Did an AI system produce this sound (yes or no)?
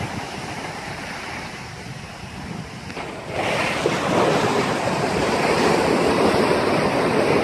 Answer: no